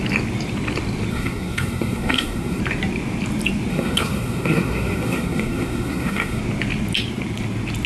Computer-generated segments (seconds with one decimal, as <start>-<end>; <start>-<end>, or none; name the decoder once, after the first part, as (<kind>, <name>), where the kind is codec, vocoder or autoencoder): 1.1-2.6 (codec, SNAC); 3.7-6.4